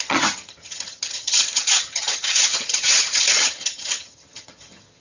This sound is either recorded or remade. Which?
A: remade